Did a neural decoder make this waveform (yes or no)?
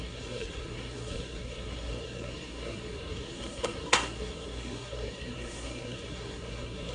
yes